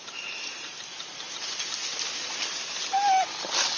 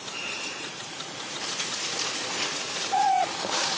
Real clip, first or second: first